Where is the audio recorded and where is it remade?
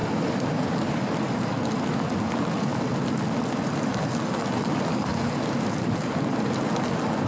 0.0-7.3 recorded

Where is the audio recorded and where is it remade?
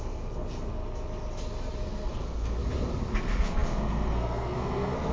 0.0-0.8 remade; 0.8-1.8 recorded; 1.8-2.6 remade; 2.6-3.2 recorded; 3.2-5.1 remade